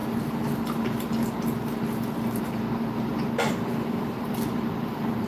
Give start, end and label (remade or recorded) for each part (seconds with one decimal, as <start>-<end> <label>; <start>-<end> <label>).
0.0-3.1 recorded; 3.1-5.3 remade